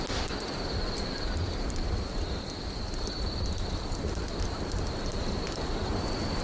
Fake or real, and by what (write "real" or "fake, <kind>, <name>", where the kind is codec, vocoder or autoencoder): real